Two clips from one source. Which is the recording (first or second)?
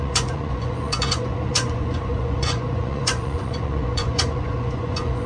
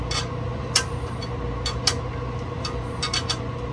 second